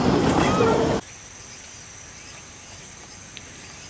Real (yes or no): yes